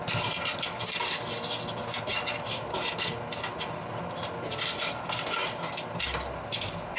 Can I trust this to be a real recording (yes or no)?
yes